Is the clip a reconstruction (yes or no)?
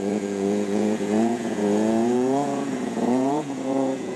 yes